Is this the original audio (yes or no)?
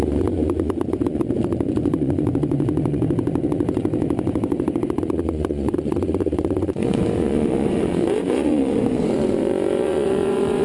no